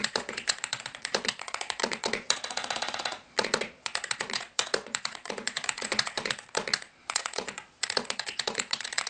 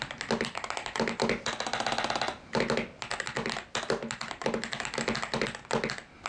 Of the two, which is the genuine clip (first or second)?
second